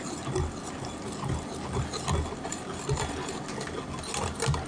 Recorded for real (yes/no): yes